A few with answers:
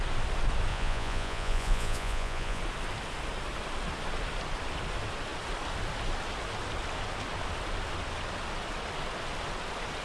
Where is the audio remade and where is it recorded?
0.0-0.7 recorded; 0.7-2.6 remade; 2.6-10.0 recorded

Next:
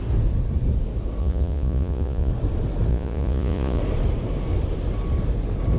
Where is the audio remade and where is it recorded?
0.0-1.2 recorded; 1.2-2.3 remade; 2.3-2.9 recorded; 2.9-3.8 remade; 3.8-5.8 recorded

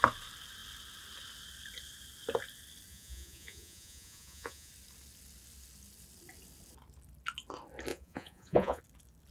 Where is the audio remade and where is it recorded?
0.0-2.9 recorded; 2.9-4.7 remade; 4.7-7.9 recorded; 7.9-8.8 remade; 8.8-9.3 recorded

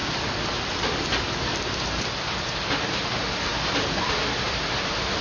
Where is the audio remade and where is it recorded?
0.0-5.2 recorded

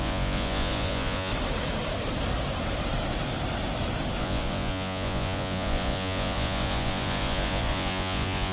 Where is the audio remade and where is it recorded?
0.0-1.3 remade; 1.3-4.2 recorded; 4.2-8.5 remade

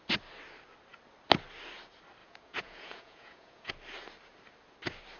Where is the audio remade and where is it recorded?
0.0-2.2 recorded; 2.2-3.7 remade; 3.7-5.2 recorded

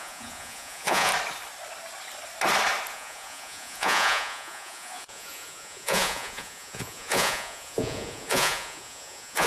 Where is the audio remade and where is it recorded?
0.0-1.1 remade; 1.1-2.9 recorded; 2.9-9.5 remade

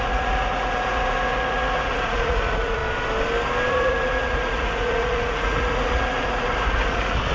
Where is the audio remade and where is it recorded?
0.0-2.8 remade; 2.8-3.7 recorded; 3.7-7.3 remade